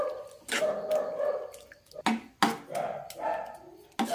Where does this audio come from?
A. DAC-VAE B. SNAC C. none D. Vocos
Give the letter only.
C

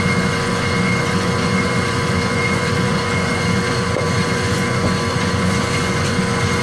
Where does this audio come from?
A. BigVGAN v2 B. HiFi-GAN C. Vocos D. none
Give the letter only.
C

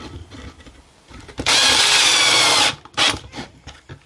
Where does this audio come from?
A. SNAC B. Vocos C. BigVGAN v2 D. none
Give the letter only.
D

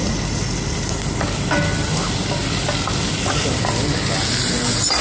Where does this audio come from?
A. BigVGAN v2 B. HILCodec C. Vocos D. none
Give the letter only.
D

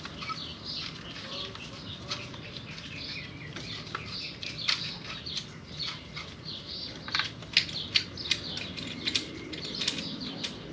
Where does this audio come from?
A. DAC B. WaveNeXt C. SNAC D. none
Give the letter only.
D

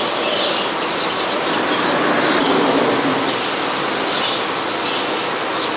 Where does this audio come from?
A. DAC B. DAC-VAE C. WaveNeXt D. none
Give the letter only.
D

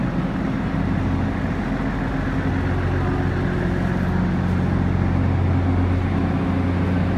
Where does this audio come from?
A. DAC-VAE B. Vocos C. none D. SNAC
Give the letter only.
C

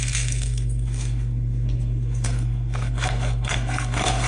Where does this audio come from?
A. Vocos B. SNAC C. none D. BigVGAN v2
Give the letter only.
B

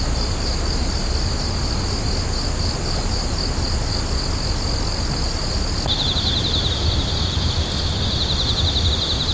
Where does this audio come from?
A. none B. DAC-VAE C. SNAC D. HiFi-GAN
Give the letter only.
A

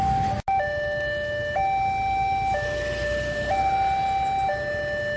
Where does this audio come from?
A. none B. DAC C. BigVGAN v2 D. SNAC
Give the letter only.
A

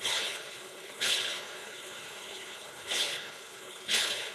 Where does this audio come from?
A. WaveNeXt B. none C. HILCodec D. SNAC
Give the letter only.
C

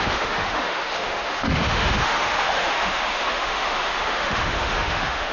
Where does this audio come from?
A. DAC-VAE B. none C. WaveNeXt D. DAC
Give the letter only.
A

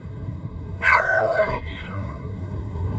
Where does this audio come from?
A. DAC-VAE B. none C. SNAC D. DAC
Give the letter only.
C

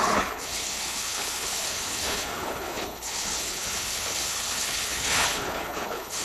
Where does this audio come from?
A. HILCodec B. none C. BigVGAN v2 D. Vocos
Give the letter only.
A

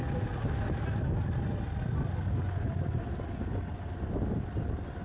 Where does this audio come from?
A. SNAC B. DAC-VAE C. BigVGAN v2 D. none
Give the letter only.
D